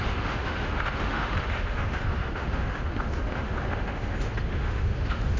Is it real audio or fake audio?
fake